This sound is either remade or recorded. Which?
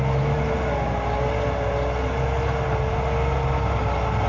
recorded